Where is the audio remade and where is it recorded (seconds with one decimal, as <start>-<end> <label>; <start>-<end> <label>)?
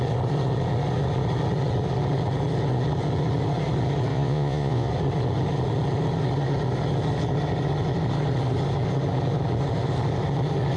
0.0-4.1 recorded; 4.1-4.9 remade; 4.9-10.8 recorded